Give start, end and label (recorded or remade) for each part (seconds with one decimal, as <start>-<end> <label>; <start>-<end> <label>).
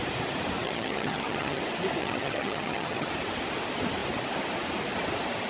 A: 0.0-0.6 recorded; 0.6-1.6 remade; 1.6-2.0 recorded; 2.0-3.1 remade; 3.1-5.5 recorded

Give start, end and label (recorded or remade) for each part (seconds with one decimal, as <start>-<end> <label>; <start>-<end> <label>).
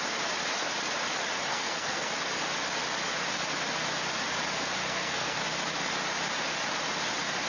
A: 0.0-1.5 recorded; 1.5-2.1 remade; 2.1-4.8 recorded; 4.8-5.4 remade; 5.4-7.5 recorded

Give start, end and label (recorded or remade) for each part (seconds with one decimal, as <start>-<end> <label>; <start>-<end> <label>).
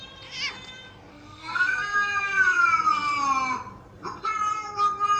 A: 0.0-1.1 recorded; 1.1-2.6 remade; 2.6-5.2 recorded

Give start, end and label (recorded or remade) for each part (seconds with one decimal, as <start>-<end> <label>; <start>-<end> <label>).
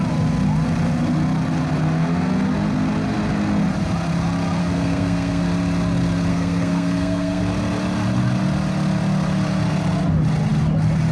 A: 0.0-4.6 recorded; 4.6-5.4 remade; 5.4-6.3 recorded; 6.3-7.4 remade; 7.4-11.1 recorded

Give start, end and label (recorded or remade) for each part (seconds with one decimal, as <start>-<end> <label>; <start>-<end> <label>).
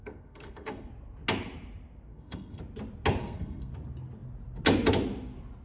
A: 0.0-0.9 remade; 0.9-2.1 recorded; 2.1-2.6 remade; 2.6-3.2 recorded; 3.2-3.7 remade; 3.7-5.6 recorded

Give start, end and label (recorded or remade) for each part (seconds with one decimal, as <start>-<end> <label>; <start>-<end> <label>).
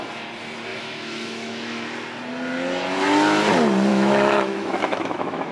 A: 0.0-0.7 recorded; 0.7-1.8 remade; 1.8-3.9 recorded; 3.9-5.5 remade